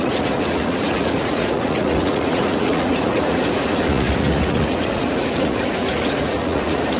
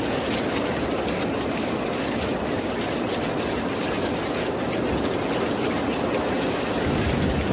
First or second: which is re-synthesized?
first